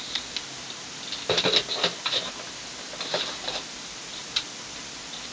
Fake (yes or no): no